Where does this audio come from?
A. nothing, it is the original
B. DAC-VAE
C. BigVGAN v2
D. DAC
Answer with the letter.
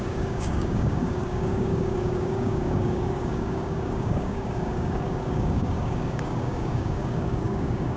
D